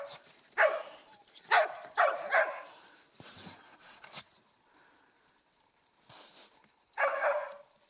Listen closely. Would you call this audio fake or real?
fake